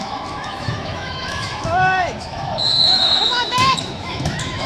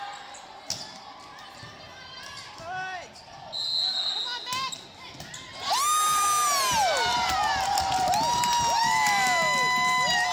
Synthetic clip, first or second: first